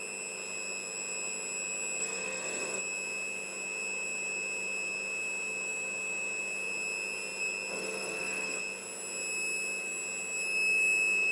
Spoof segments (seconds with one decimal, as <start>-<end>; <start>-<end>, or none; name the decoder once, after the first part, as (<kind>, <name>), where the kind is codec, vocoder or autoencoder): 2.0-2.8 (codec, SNAC); 7.7-8.6